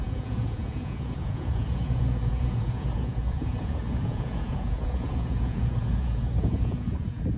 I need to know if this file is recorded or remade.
remade